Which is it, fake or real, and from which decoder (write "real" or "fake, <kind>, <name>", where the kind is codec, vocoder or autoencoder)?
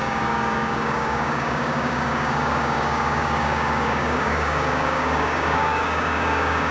fake, codec, DAC